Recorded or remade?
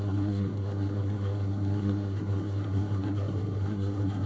remade